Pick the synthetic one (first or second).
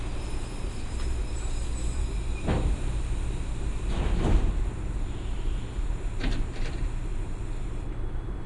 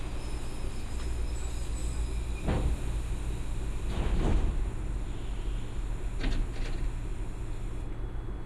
first